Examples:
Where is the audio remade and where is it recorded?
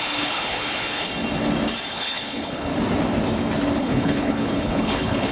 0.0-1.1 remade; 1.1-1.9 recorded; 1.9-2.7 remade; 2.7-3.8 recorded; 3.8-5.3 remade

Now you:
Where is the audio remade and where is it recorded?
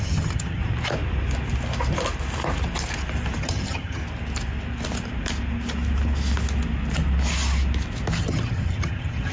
0.0-0.6 remade; 0.6-3.4 recorded; 3.4-4.0 remade; 4.0-8.2 recorded; 8.2-9.3 remade